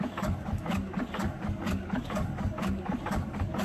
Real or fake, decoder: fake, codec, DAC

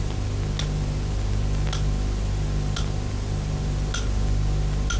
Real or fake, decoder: real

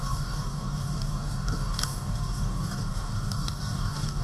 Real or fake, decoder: fake, codec, DAC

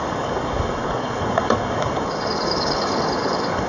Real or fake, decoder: fake, codec, DAC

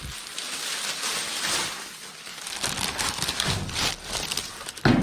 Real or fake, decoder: real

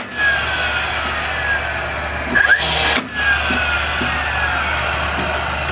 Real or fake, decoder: real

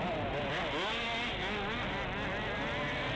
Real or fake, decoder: real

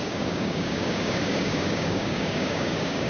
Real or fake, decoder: fake, codec, DAC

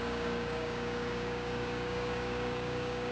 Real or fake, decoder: fake, codec, DAC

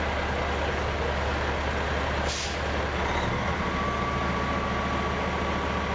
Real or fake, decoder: real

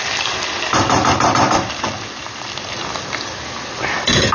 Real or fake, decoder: real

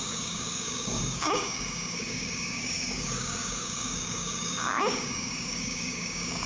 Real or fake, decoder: fake, codec, DAC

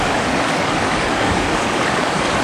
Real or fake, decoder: fake, codec, DAC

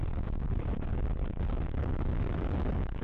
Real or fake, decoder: fake, codec, DAC